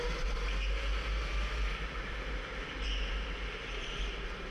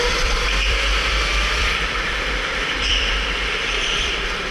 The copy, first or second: second